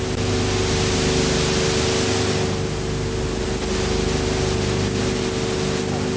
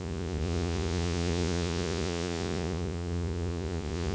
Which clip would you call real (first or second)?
first